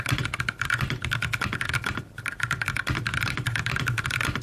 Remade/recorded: recorded